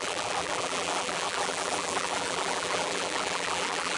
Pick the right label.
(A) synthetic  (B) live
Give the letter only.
A